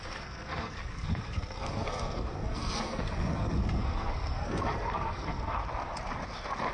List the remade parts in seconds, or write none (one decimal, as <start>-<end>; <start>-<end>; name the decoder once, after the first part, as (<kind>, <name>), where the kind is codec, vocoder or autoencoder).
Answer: 0.0-5.6 (codec, SNAC)